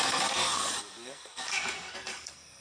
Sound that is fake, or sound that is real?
fake